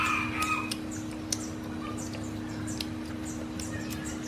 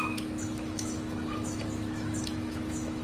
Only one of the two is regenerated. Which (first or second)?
second